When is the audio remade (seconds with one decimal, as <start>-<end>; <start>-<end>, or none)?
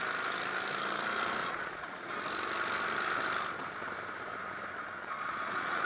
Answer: 1.4-2.1; 5.0-5.8